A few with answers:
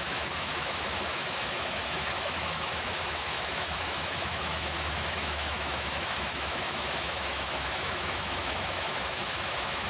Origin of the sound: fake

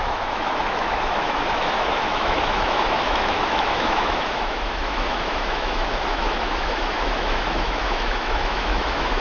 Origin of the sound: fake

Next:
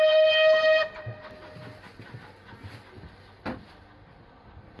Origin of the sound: real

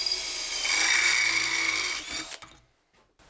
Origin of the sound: real